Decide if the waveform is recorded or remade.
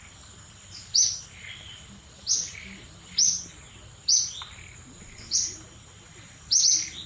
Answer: recorded